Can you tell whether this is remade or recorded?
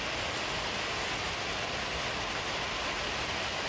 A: recorded